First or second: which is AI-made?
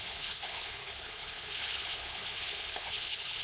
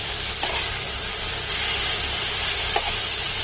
first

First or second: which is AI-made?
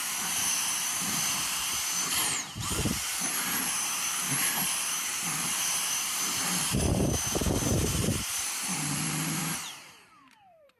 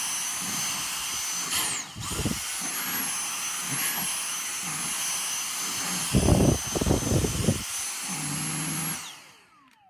first